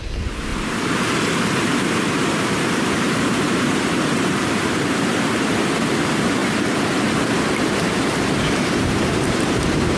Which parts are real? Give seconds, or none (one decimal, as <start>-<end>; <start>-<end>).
0.5-1.5; 6.4-7.6